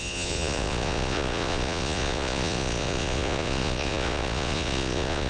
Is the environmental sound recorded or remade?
remade